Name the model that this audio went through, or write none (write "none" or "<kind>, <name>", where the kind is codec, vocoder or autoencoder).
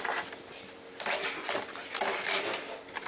none